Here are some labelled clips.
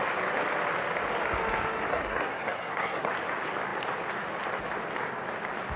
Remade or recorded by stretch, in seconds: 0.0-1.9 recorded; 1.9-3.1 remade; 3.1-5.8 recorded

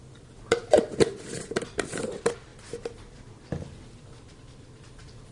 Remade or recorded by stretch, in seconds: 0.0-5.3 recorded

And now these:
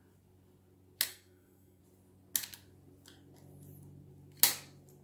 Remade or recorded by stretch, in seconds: 0.0-1.1 recorded; 1.1-1.8 remade; 1.8-5.0 recorded

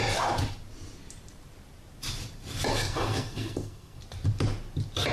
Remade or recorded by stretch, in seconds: 0.0-2.7 recorded; 2.7-4.0 remade; 4.0-5.1 recorded

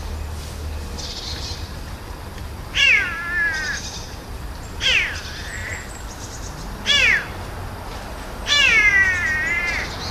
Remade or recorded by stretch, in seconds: 0.0-10.1 recorded